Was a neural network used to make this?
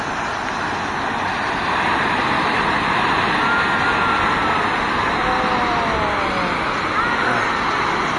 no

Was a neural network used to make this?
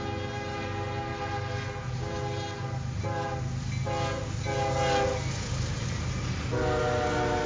no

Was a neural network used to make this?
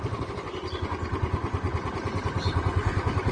no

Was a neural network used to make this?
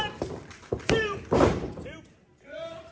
yes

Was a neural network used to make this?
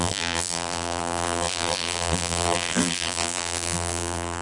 yes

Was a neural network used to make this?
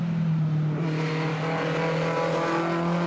no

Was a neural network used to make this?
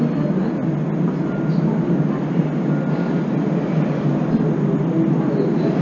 no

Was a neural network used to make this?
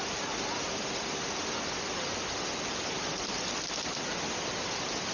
no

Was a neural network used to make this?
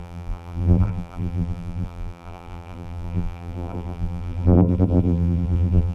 yes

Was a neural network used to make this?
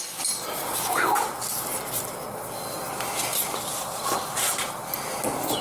no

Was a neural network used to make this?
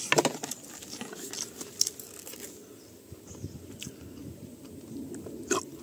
no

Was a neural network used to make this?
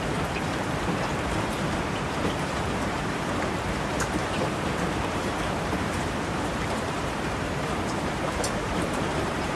yes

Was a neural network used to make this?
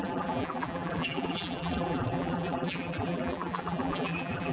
yes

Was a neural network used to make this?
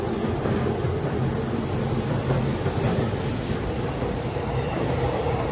no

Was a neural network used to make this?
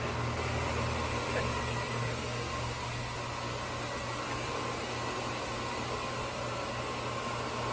no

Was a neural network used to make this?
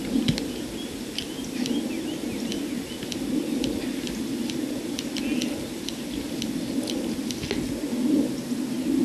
no